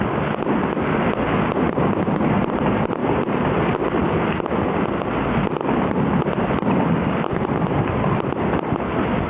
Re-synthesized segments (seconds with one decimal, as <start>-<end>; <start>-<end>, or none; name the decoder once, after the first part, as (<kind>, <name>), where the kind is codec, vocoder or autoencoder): 3.0-3.6 (vocoder, BigVGAN v2)